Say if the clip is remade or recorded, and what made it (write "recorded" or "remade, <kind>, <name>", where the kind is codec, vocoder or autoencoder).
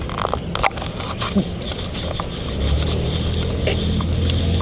recorded